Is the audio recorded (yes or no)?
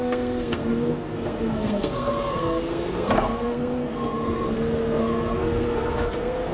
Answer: no